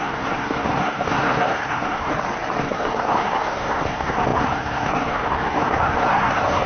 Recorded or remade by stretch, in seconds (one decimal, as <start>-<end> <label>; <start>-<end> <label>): 0.0-2.1 remade; 2.1-2.6 recorded; 2.6-6.7 remade